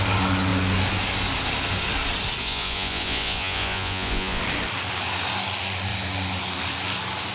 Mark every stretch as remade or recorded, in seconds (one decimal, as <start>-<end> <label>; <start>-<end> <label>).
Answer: 0.0-2.4 recorded; 2.4-4.4 remade; 4.4-7.3 recorded